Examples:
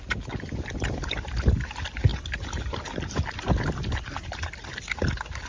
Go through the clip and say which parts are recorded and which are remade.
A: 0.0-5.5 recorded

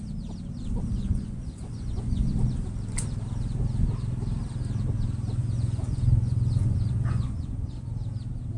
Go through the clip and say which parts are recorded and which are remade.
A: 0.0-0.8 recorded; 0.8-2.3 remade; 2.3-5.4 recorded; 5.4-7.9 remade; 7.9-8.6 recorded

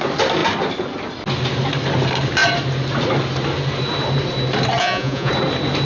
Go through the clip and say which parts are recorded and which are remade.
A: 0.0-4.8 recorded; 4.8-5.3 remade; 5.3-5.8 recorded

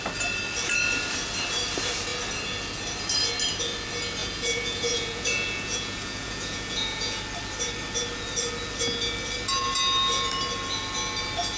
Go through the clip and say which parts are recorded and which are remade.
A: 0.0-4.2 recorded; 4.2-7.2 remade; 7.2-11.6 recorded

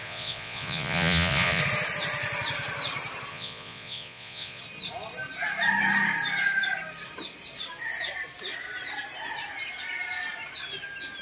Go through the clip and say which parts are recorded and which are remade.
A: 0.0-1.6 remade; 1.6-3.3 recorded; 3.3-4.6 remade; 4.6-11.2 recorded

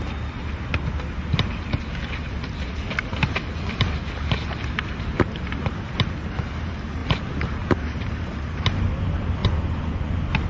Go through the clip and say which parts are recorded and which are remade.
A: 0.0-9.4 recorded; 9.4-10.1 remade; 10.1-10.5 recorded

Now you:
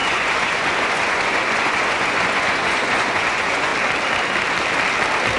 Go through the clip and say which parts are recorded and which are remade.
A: 0.0-3.7 remade; 3.7-5.4 recorded